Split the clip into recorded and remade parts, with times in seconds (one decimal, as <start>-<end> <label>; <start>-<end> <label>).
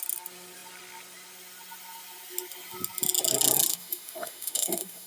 0.0-3.7 recorded; 3.7-5.1 remade